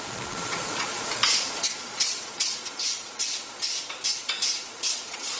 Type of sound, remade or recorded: remade